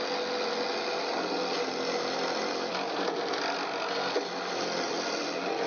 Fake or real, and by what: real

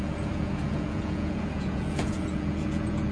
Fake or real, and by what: fake, vocoder, Vocos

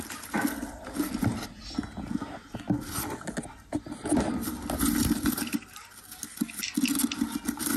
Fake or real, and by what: real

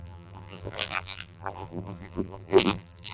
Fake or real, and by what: fake, vocoder, BigVGAN v2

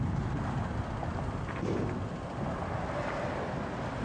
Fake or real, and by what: real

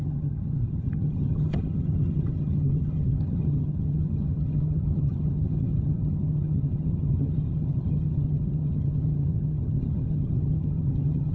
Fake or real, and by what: fake, vocoder, HiFi-GAN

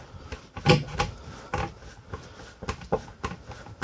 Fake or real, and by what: real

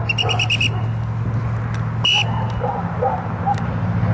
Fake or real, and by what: real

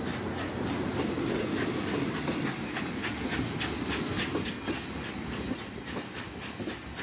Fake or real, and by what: real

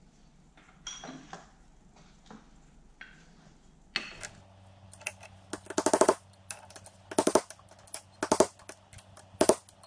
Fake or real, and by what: real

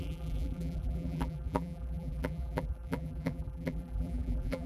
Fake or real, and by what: fake, vocoder, BigVGAN v2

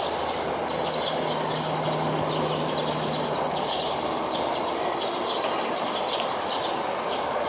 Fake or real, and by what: real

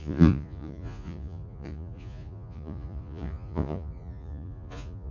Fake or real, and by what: fake, vocoder, Vocos